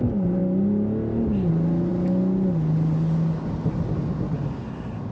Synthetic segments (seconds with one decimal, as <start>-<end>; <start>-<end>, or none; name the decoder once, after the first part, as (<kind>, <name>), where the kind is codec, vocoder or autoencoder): none